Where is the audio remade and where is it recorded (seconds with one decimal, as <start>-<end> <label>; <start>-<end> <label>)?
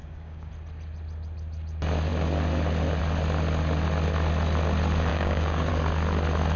0.0-0.5 remade; 0.5-5.1 recorded; 5.1-5.7 remade; 5.7-6.6 recorded